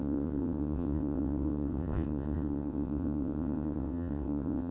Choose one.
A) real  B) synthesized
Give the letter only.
B